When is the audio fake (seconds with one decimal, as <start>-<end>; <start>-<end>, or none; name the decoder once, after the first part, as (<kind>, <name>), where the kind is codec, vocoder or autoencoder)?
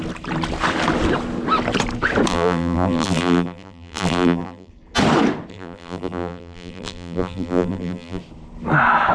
2.3-4.7 (vocoder, BigVGAN v2); 5.5-8.2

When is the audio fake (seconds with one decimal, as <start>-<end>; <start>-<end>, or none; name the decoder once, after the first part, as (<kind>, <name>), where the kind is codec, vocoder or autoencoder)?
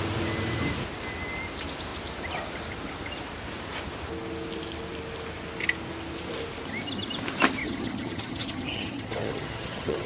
7.6-10.1 (vocoder, HiFi-GAN)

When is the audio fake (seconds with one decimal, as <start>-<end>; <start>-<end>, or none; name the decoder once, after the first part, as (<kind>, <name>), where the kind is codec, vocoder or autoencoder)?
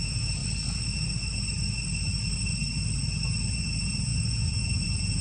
0.0-0.4 (vocoder, Vocos); 3.5-5.2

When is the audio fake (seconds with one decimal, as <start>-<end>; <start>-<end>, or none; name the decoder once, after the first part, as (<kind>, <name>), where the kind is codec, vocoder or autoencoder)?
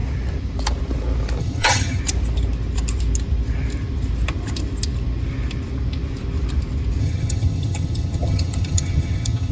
1.4-2.0 (vocoder, HiFi-GAN); 7.0-9.5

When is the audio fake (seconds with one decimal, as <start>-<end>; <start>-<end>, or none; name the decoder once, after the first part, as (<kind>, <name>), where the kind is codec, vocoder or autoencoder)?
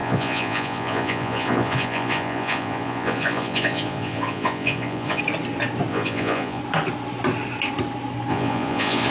0.0-5.2 (vocoder, Vocos); 5.9-6.6; 8.3-9.1